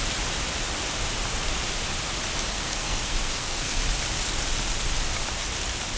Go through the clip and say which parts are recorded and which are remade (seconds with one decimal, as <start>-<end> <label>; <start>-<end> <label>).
0.0-2.5 recorded; 2.5-3.8 remade; 3.8-6.0 recorded